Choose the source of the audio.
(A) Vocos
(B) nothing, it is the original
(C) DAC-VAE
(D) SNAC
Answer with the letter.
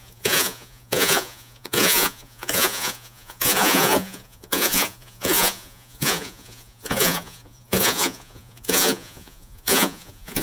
A